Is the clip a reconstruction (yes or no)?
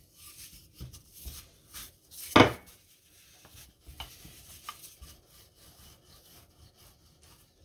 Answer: no